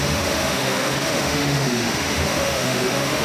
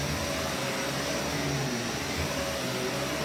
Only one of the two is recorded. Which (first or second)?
second